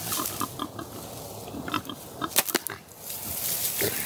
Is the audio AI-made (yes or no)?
no